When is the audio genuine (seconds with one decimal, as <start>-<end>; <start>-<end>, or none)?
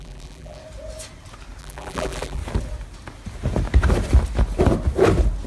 0.6-1.6; 2.4-5.5